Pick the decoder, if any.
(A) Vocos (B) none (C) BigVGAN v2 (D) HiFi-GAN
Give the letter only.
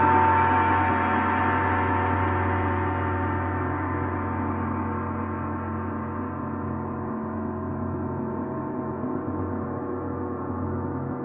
B